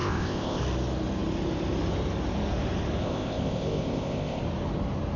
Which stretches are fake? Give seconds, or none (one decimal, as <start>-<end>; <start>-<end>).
0.0-0.6; 3.0-4.4